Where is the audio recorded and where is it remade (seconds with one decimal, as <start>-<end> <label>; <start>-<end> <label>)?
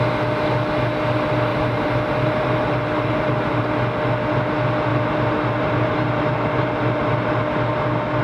0.0-1.5 recorded; 1.5-3.6 remade; 3.6-4.9 recorded; 4.9-7.4 remade; 7.4-8.2 recorded